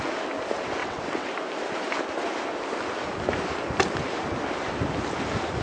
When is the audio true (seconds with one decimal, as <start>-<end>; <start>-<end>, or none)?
0.0-0.8; 1.3-5.6